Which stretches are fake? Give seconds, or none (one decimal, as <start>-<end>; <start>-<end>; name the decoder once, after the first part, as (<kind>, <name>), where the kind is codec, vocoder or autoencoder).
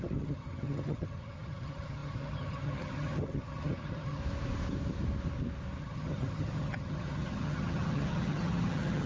0.0-4.2 (vocoder, HiFi-GAN); 5.8-9.1